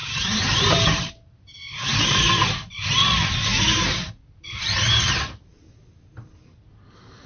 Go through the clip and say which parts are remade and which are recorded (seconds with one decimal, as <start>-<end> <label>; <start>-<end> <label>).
0.0-1.1 remade; 1.1-3.5 recorded; 3.5-4.1 remade; 4.1-7.3 recorded